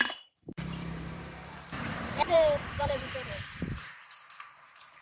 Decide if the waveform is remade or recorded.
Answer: remade